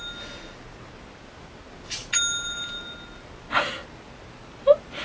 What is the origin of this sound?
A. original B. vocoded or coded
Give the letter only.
A